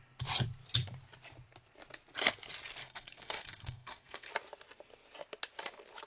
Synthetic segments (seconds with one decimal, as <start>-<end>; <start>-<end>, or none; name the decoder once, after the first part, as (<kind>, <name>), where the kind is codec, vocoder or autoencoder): 2.8-4.3 (codec, SNAC)